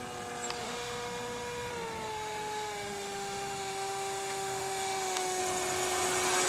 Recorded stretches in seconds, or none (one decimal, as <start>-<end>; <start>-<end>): 0.0-0.6; 1.7-2.1; 5.4-6.5